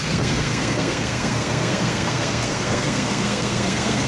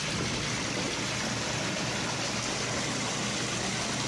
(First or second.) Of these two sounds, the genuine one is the second